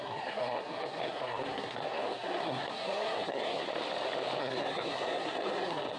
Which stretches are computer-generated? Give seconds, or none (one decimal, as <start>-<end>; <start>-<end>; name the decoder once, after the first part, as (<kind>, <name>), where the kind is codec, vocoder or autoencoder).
0.0-3.7 (codec, SNAC); 4.4-6.0